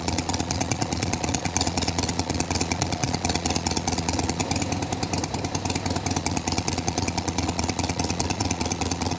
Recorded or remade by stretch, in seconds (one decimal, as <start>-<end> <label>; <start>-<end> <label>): 0.0-4.4 remade; 4.4-6.2 recorded; 6.2-9.2 remade